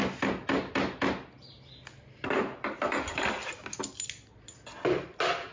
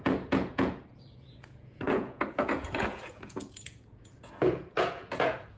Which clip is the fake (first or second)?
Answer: second